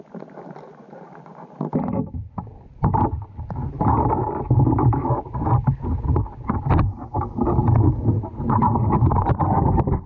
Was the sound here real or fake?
real